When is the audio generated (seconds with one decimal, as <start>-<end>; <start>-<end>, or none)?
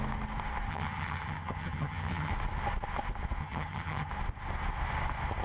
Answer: 0.7-2.3; 3.4-4.1